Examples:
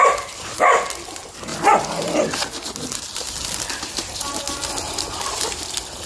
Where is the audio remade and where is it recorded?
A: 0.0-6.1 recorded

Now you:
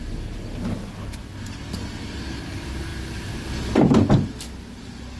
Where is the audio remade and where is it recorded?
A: 0.0-5.2 recorded

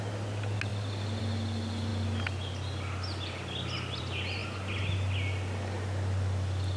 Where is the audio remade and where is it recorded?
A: 0.0-6.8 recorded

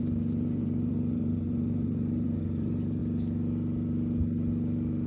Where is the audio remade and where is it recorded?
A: 0.0-3.0 remade; 3.0-5.1 recorded

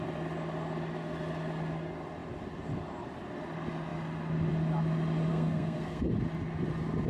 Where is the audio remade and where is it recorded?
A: 0.0-5.3 recorded; 5.3-6.0 remade; 6.0-7.1 recorded